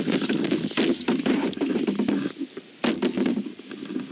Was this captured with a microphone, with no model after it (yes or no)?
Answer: yes